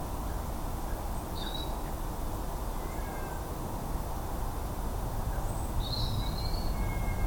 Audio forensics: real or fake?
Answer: real